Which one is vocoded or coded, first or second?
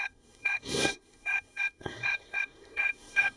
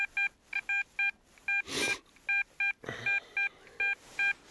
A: first